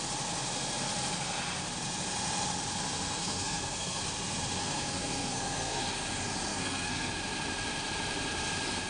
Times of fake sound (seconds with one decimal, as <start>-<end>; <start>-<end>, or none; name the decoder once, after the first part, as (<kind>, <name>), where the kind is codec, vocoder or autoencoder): 3.2-4.0 (codec, SNAC); 4.6-5.8; 6.5-7.1